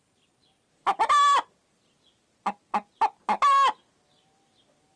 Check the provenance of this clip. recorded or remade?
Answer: recorded